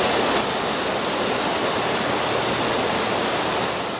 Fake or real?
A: real